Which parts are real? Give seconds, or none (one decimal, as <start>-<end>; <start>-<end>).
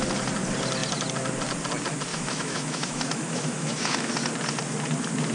0.0-2.1; 4.1-5.3